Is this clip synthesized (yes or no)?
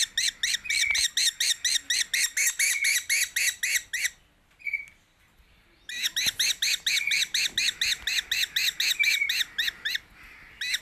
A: no